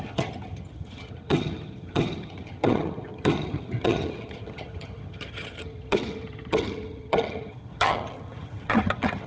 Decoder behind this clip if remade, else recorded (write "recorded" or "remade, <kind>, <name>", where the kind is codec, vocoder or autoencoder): remade, vocoder, HiFi-GAN